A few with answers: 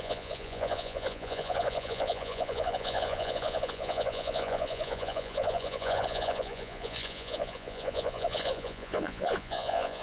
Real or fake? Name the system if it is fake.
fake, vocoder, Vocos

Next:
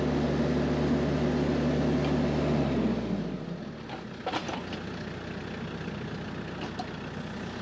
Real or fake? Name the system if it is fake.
real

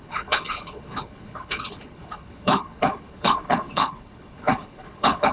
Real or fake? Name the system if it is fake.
fake, codec, HILCodec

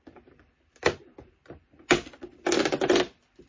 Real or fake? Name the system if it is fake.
fake, vocoder, BigVGAN v2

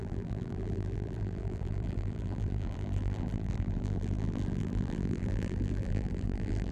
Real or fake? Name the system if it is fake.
fake, vocoder, BigVGAN v2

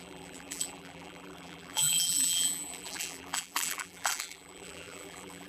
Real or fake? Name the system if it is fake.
fake, vocoder, BigVGAN v2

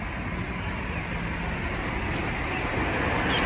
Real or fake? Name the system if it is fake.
real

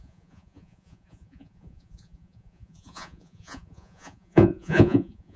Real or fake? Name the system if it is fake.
fake, vocoder, Vocos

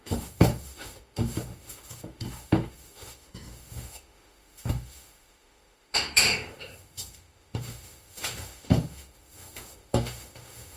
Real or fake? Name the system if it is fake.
fake, autoencoder, DAC-VAE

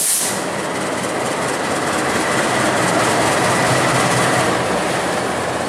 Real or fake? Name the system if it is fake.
real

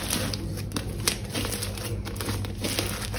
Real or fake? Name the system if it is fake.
real